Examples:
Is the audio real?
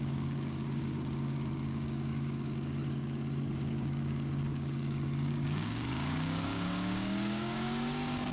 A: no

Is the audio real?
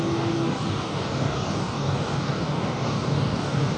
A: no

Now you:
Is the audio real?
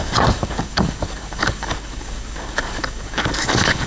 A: no